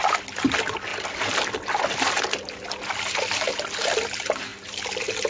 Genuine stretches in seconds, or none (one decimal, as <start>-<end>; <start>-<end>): 0.0-5.3